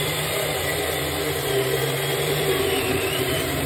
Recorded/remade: remade